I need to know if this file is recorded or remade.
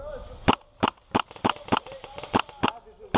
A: recorded